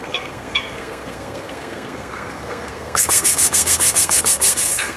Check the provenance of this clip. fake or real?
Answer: fake